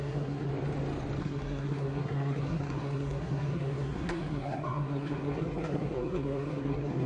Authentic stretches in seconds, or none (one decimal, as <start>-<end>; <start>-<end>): 0.5-1.2